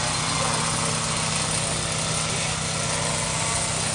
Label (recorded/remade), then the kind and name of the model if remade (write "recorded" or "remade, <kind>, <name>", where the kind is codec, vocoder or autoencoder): recorded